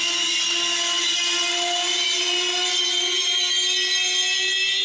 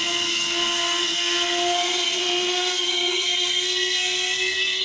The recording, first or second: first